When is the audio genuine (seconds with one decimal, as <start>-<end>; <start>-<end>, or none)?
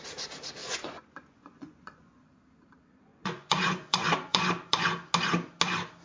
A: 0.0-0.6; 2.2-3.1; 4.5-6.0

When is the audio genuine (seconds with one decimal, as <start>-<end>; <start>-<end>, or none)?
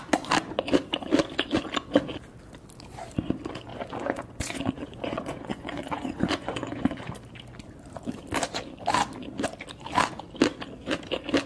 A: 0.0-3.7; 7.1-11.5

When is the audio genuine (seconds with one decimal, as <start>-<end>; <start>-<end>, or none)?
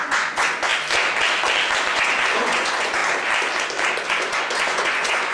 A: 0.7-1.9; 3.0-4.2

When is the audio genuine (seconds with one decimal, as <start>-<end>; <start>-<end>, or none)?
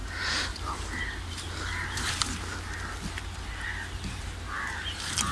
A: 0.0-5.3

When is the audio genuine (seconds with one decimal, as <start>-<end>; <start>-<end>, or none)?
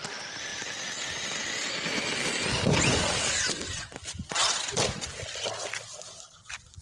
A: 0.0-6.8